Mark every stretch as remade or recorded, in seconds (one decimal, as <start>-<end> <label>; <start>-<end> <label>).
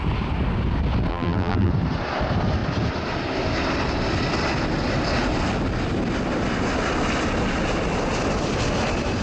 0.0-1.1 recorded; 1.1-1.7 remade; 1.7-9.2 recorded